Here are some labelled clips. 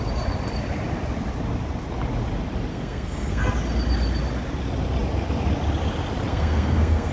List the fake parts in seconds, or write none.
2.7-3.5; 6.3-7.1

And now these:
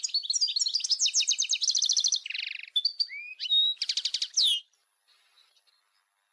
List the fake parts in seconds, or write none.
none

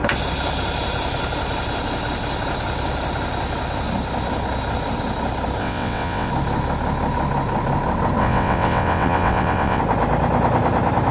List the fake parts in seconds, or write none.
5.6-6.3; 8.2-9.8

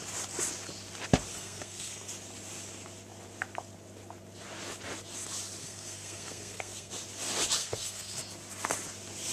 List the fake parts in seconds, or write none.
1.3-2.1; 5.6-6.9; 7.6-8.2

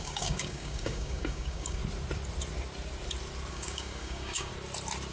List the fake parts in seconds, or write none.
0.0-1.8; 3.5-4.5

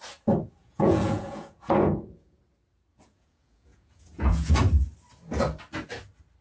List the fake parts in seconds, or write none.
0.6-2.4; 2.9-4.6